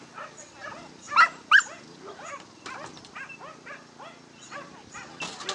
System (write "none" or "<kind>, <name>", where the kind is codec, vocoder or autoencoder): none